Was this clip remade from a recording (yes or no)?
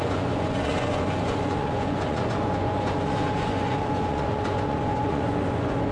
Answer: yes